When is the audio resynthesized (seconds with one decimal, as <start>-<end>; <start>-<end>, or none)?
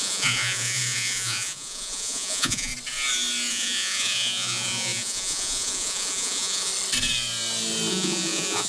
0.0-2.7; 3.5-6.7; 7.9-8.7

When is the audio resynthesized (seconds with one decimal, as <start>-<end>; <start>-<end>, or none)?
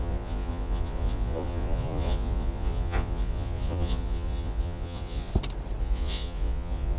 0.0-5.3; 5.8-7.0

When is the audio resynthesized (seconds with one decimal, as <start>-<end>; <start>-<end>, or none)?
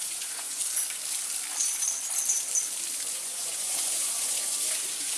0.0-0.6; 3.1-5.2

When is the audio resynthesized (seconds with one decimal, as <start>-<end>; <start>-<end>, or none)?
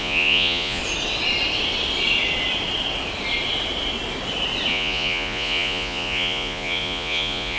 0.0-0.8; 4.7-7.6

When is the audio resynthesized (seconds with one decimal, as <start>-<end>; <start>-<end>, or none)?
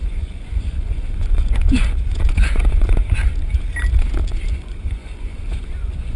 0.0-3.2; 4.5-6.2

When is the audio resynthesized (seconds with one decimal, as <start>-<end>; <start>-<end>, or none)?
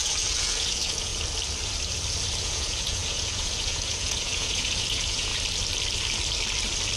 0.0-1.1; 2.4-5.3